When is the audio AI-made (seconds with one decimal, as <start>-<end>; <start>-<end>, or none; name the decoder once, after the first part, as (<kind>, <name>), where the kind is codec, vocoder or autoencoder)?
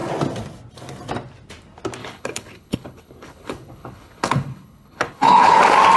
2.0-5.6 (codec, HILCodec)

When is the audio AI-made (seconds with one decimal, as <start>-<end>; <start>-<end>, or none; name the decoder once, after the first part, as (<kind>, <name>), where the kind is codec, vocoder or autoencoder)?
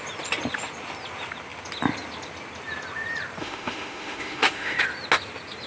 3.4-4.8 (autoencoder, DAC-VAE)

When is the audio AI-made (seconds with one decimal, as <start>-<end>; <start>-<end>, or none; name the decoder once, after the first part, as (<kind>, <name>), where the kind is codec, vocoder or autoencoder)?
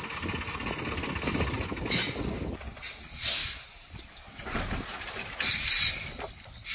none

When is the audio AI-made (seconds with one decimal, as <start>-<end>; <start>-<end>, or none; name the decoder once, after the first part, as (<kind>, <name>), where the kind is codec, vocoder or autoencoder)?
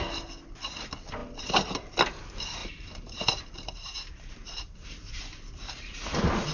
2.6-5.1 (vocoder, BigVGAN v2)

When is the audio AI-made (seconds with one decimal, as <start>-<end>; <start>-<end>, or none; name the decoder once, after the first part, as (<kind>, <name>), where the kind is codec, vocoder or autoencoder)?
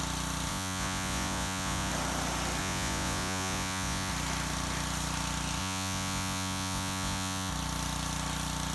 0.5-1.9 (vocoder, Vocos); 2.6-4.1; 5.6-7.5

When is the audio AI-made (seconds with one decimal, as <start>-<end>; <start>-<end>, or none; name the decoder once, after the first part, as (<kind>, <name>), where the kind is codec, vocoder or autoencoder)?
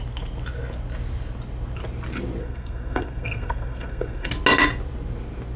2.4-4.3 (codec, SNAC)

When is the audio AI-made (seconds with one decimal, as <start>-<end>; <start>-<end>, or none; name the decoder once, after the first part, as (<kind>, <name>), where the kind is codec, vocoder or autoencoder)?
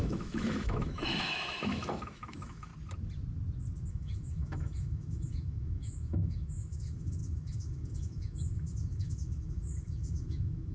0.0-2.7 (autoencoder, DAC-VAE); 3.9-10.7